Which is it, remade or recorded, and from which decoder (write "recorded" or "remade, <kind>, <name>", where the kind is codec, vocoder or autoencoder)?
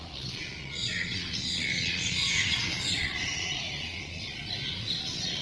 remade, vocoder, Vocos